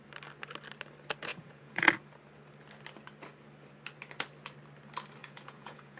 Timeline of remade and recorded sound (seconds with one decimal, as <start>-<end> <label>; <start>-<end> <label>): 0.0-1.3 recorded; 1.3-1.9 remade; 1.9-5.2 recorded; 5.2-6.0 remade

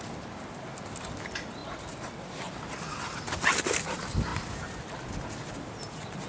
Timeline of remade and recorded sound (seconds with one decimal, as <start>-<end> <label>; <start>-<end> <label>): 0.0-6.3 recorded

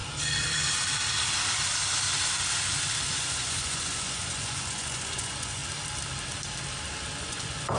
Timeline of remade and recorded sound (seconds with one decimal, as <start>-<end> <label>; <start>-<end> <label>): 0.0-3.1 recorded; 3.1-5.6 remade; 5.6-7.2 recorded; 7.2-7.8 remade

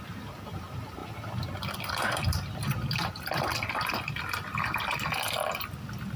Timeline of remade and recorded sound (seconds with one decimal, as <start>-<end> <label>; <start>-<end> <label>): 0.0-6.2 recorded